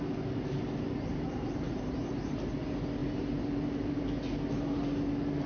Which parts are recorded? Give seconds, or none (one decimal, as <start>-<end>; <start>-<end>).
0.0-1.1; 2.6-3.0; 4.1-5.5